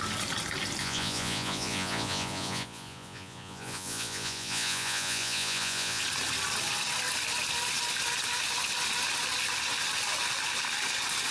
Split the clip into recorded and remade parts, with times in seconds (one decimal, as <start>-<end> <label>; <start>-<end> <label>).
0.0-0.8 recorded; 0.8-6.0 remade; 6.0-11.3 recorded